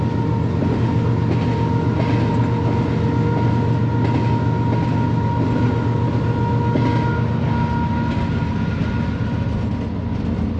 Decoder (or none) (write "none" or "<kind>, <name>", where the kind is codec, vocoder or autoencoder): none